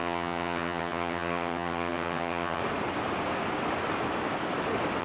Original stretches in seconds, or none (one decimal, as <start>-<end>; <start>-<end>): 2.6-5.0